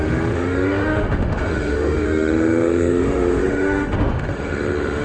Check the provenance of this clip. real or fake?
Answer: fake